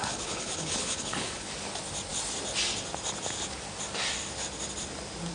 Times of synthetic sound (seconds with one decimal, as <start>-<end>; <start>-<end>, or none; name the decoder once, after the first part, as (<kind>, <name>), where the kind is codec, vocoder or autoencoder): 0.0-1.5 (codec, HILCodec)